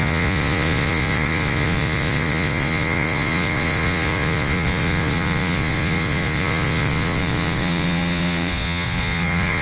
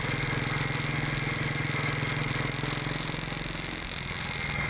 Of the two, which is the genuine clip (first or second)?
second